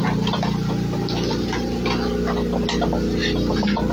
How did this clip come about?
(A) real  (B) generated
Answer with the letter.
A